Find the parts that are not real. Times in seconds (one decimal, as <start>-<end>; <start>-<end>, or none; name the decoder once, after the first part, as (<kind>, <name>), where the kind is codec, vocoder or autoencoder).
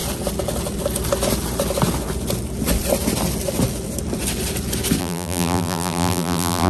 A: 5.0-6.7 (vocoder, BigVGAN v2)